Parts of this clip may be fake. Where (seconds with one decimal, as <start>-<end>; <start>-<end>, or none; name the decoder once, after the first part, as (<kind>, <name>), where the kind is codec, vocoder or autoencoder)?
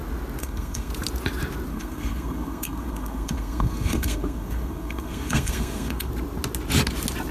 0.4-0.9 (codec, SNAC); 1.7-6.1